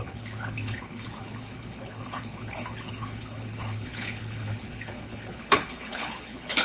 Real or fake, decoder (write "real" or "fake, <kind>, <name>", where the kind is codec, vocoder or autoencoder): fake, codec, HILCodec